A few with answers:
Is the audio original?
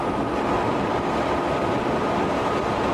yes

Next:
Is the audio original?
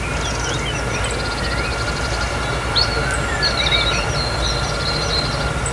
yes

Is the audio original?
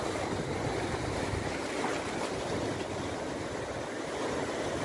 yes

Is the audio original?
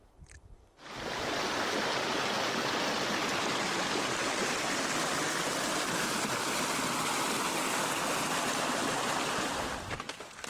yes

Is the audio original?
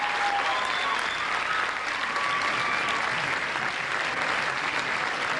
yes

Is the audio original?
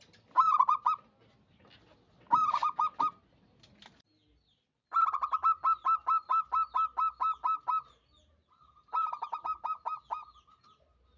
yes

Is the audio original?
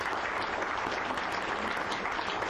yes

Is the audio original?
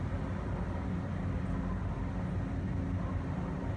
yes